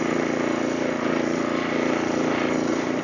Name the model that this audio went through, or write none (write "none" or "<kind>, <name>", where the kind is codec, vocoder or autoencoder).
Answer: none